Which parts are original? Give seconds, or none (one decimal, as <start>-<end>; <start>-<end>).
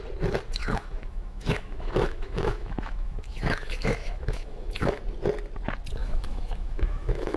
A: 0.0-0.6; 5.0-6.0